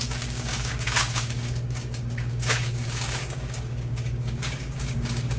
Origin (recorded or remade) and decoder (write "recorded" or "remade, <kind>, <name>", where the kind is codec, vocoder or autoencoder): remade, codec, DAC